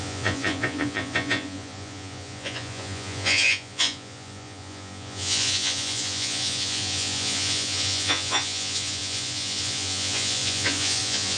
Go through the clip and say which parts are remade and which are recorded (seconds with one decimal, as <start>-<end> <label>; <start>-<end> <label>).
0.0-11.4 remade